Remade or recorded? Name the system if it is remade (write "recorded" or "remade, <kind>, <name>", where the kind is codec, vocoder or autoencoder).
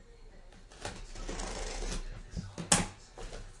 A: recorded